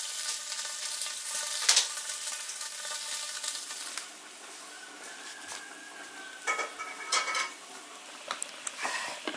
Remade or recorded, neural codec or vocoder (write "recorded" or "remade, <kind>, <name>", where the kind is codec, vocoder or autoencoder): recorded